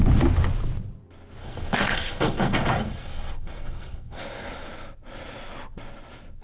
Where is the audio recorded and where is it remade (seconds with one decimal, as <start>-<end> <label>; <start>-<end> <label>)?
0.0-1.4 recorded; 1.4-4.2 remade; 4.2-6.4 recorded